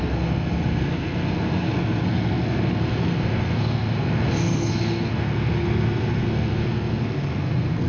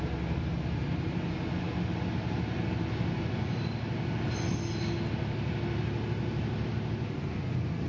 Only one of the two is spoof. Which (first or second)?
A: first